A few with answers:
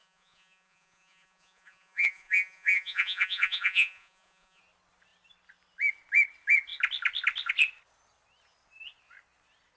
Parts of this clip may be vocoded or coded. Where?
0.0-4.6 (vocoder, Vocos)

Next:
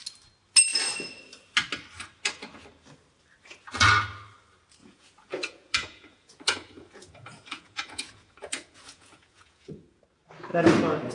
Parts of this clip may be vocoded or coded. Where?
4.8-10.0 (vocoder, Vocos)

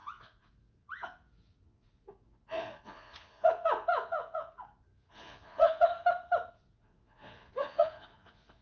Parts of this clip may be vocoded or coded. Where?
0.0-5.9 (vocoder, Vocos); 6.5-8.6

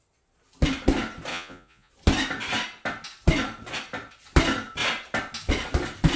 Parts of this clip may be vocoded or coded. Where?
1.3-1.9 (vocoder, Vocos)

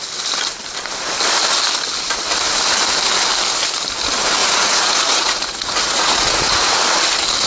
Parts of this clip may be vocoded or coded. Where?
4.4-6.8 (vocoder, Vocos)

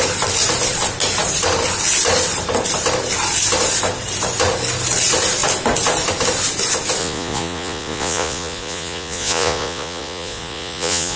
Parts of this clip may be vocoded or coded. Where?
7.0-11.2 (vocoder, Vocos)

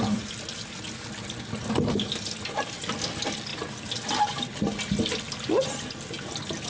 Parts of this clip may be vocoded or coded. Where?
none